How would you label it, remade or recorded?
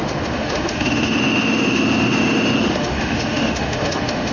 remade